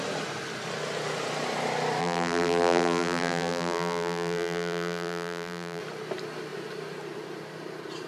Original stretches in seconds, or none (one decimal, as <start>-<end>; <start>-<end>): 0.0-2.0; 5.8-8.1